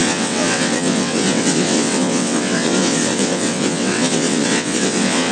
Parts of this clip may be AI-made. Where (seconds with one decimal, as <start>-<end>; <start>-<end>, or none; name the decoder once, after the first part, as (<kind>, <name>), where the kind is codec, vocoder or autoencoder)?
0.0-5.3 (vocoder, WaveNeXt)